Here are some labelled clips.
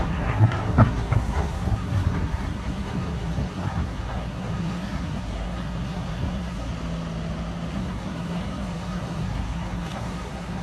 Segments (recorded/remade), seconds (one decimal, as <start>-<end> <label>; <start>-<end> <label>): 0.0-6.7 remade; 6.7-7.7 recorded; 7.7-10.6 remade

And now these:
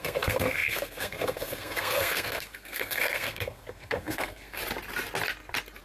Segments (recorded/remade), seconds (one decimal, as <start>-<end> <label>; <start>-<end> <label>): 0.0-4.6 remade; 4.6-5.8 recorded

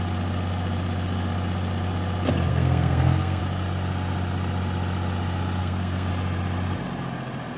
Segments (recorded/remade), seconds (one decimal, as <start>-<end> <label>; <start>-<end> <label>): 0.0-2.5 recorded; 2.5-3.4 remade; 3.4-5.6 recorded; 5.6-6.1 remade; 6.1-7.6 recorded